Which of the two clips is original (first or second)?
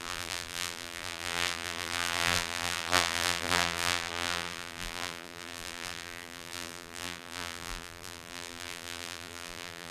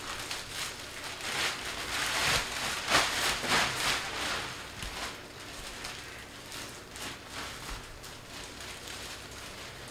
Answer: second